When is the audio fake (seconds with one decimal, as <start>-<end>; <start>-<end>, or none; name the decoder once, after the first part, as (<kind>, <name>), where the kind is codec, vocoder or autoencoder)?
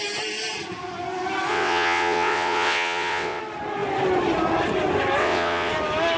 1.5-3.4 (vocoder, WaveNeXt); 5.2-5.7